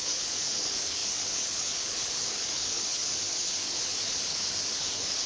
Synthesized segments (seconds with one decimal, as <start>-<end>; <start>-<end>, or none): 0.0-5.3